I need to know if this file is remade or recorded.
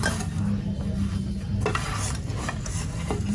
recorded